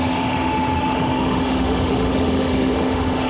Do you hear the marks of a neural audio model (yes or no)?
yes